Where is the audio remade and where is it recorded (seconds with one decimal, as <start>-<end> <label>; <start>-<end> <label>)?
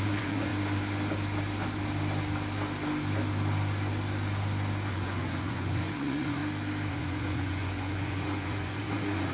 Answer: 0.0-0.5 remade; 0.5-4.9 recorded; 4.9-6.4 remade; 6.4-6.9 recorded; 6.9-9.3 remade